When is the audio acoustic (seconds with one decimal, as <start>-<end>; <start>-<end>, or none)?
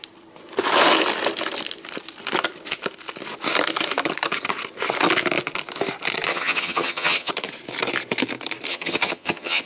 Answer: 0.0-6.3; 7.3-8.7